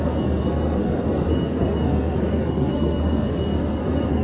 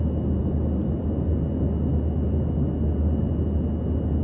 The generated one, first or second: first